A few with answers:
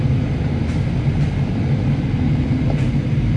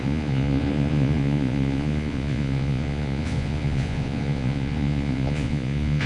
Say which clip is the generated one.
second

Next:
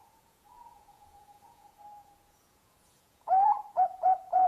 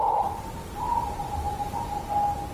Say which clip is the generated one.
first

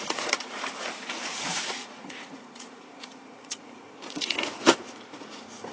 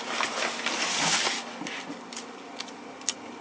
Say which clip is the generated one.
first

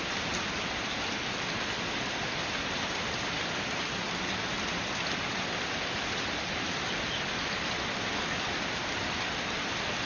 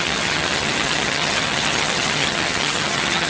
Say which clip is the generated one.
second